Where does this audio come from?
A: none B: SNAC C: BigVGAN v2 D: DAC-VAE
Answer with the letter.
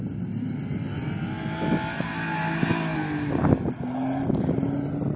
A